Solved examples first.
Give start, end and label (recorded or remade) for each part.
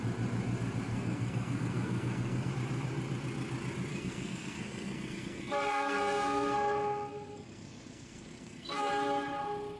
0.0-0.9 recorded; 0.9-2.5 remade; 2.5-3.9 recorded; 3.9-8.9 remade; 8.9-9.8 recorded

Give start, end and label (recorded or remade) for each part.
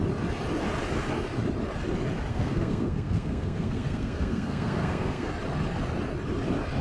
0.0-2.3 recorded; 2.3-5.3 remade; 5.3-6.8 recorded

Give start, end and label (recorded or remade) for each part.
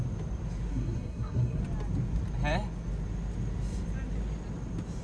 0.0-0.7 recorded; 0.7-1.6 remade; 1.6-5.0 recorded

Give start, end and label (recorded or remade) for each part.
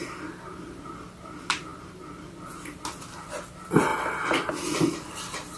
0.0-5.6 recorded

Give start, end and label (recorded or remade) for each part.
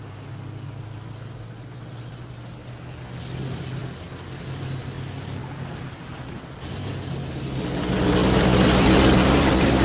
0.0-9.8 recorded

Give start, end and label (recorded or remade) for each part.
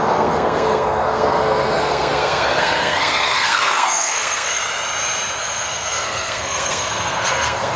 0.0-4.6 remade; 4.6-5.4 recorded; 5.4-7.8 remade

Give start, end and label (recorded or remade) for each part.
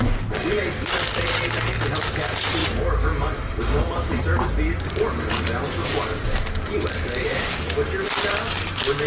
0.0-9.1 recorded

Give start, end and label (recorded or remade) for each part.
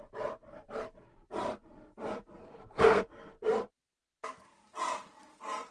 0.0-2.4 recorded; 2.4-3.0 remade; 3.0-5.7 recorded